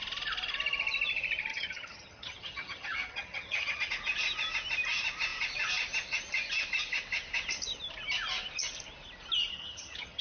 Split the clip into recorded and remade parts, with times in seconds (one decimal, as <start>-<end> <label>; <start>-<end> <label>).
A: 0.0-1.5 recorded; 1.5-3.9 remade; 3.9-9.5 recorded; 9.5-10.2 remade